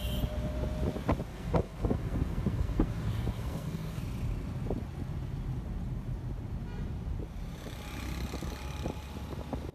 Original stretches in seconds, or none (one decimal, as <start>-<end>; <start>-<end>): 0.0-1.3; 4.0-9.7